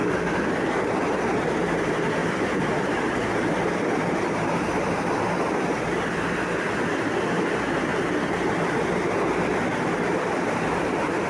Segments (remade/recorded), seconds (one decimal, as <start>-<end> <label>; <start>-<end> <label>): 0.0-1.7 recorded; 1.7-7.9 remade; 7.9-8.5 recorded; 8.5-11.3 remade